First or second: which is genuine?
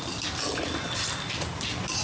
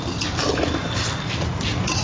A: first